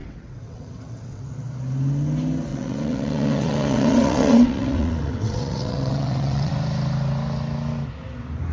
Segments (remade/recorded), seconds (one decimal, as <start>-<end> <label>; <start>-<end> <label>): 0.0-1.2 remade; 1.2-2.5 recorded; 2.5-6.5 remade; 6.5-8.5 recorded